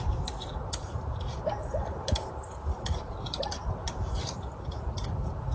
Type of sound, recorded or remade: recorded